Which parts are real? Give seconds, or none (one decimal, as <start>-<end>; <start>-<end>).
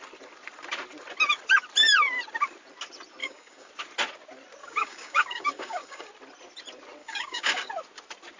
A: 0.0-3.2; 3.7-4.6; 6.1-7.0; 7.7-8.4